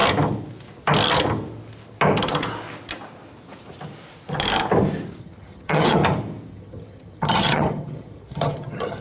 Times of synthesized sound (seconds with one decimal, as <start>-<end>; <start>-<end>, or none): 5.2-6.0; 6.5-9.0